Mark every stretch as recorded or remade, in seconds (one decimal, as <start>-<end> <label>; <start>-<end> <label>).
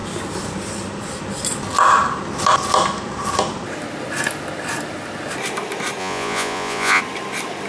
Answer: 0.0-6.0 recorded; 6.0-7.0 remade; 7.0-7.7 recorded